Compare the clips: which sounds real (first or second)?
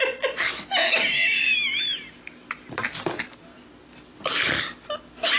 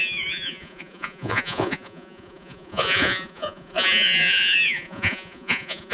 first